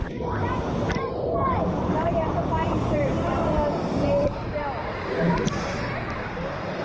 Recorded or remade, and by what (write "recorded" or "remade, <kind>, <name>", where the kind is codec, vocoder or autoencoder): remade, vocoder, BigVGAN v2